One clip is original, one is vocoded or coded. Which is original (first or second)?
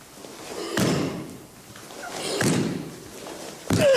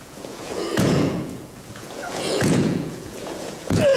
first